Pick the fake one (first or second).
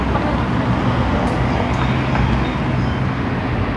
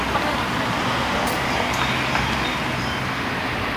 second